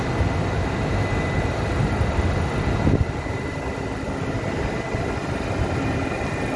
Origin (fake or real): real